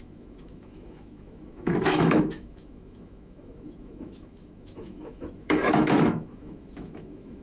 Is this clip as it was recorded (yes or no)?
no